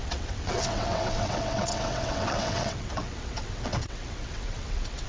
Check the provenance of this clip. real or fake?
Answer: fake